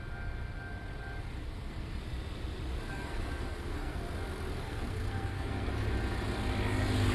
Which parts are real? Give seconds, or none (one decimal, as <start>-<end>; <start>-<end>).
0.0-1.4; 2.0-2.9; 4.0-4.6; 5.7-7.1